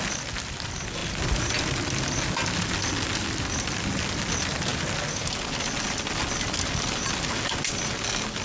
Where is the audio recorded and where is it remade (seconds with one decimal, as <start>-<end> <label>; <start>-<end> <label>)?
0.0-8.4 recorded